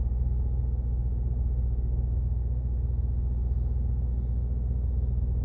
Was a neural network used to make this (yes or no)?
no